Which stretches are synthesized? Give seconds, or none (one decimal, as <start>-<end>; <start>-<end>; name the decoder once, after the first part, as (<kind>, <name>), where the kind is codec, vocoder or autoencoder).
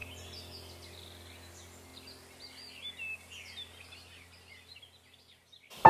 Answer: none